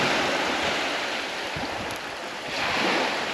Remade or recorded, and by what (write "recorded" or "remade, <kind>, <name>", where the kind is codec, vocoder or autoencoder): recorded